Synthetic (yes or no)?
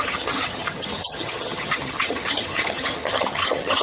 yes